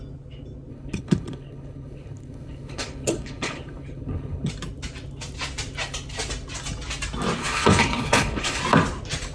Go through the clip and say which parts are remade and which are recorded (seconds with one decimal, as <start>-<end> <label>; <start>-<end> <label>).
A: 0.0-0.7 recorded; 0.7-4.5 remade; 4.5-7.4 recorded; 7.4-8.6 remade; 8.6-9.3 recorded